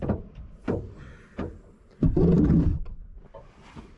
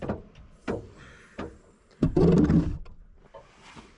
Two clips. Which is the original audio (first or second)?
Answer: second